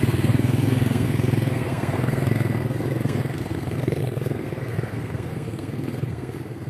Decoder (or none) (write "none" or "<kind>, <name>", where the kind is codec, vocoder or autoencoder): codec, SNAC